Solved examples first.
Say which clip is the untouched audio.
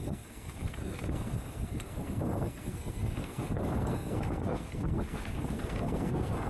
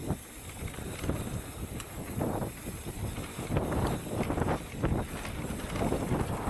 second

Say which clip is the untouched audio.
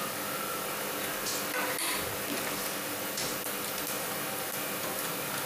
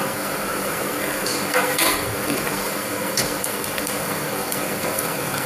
first